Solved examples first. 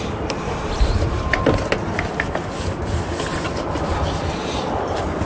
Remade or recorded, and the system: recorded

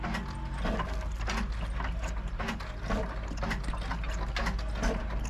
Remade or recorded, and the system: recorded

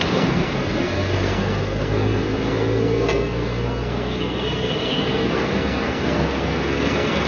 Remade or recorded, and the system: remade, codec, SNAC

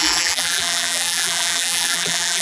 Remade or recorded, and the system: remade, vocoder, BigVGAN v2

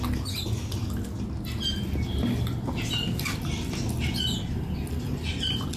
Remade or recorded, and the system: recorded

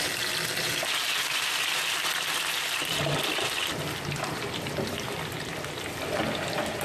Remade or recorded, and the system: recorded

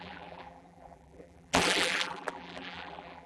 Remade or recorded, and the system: remade, vocoder, BigVGAN v2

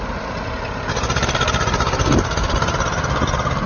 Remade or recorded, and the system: remade, vocoder, BigVGAN v2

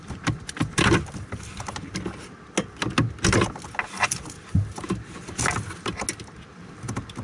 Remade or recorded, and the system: recorded